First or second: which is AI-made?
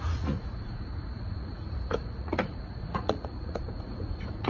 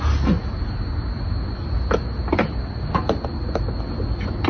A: first